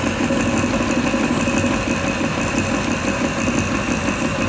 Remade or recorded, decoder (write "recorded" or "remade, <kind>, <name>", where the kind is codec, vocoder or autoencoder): recorded